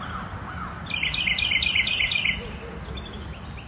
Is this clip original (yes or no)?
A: yes